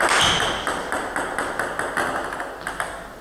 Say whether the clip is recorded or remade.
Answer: recorded